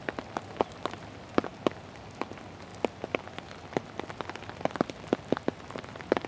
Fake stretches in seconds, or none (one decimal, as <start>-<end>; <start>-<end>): none